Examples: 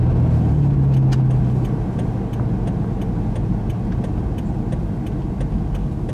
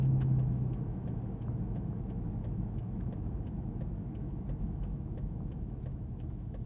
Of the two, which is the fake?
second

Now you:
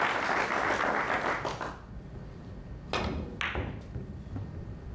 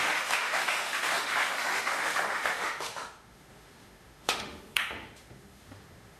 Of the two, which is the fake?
second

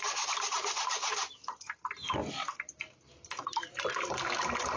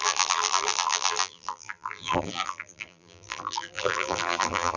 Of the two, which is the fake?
second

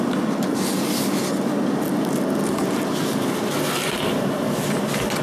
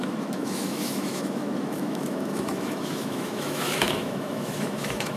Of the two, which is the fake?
second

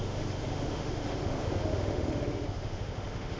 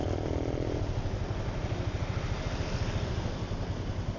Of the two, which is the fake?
first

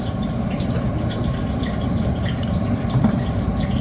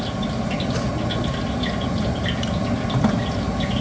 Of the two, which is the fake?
first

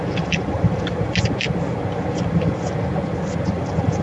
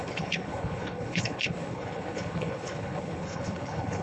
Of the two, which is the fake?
second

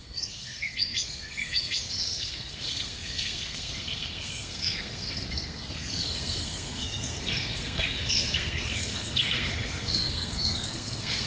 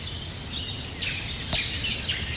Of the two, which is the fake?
first